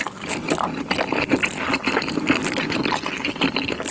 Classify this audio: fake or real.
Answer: real